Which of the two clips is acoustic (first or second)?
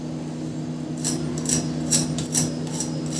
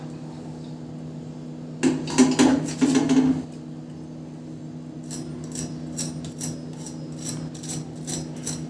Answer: second